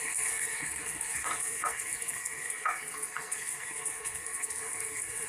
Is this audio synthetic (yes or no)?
yes